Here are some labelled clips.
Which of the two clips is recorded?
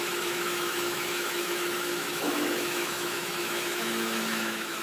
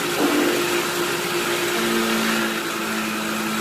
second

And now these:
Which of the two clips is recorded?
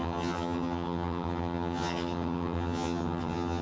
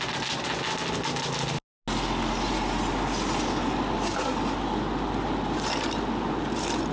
second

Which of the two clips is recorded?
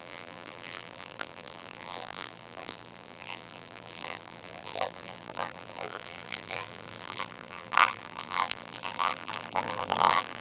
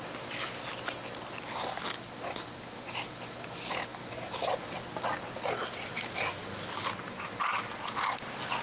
second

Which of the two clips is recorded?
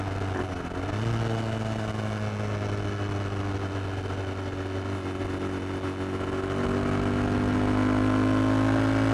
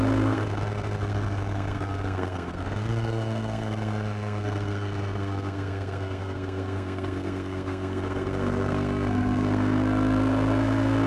first